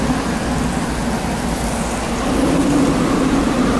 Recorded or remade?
recorded